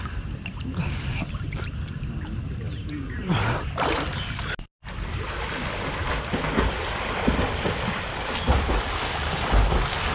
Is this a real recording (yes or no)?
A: yes